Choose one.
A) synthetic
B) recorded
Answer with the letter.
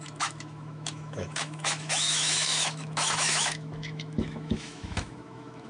A